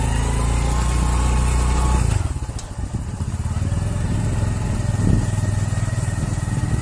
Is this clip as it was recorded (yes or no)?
yes